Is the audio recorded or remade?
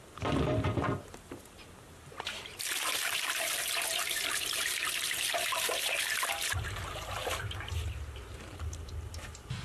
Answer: remade